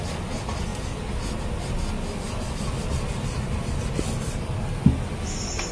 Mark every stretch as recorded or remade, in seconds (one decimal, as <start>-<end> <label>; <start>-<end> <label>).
0.0-5.7 recorded